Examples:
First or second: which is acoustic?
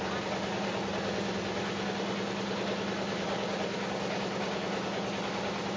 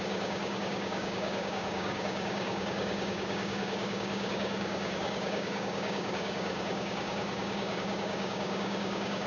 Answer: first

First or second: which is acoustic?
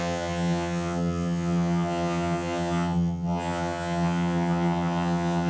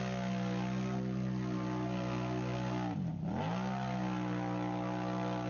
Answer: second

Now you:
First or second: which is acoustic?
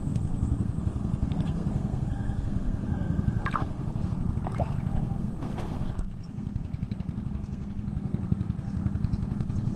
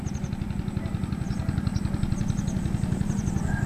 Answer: second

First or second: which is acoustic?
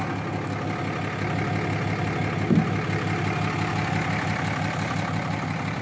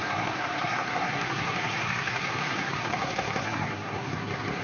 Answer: first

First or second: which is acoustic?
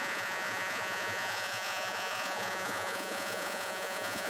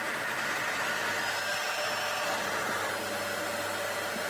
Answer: second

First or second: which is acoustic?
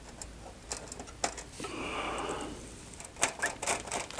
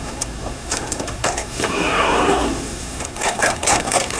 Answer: first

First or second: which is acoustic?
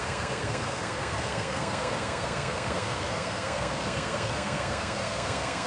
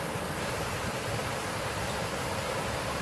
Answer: second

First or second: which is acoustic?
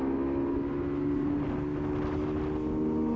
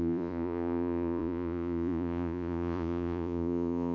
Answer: first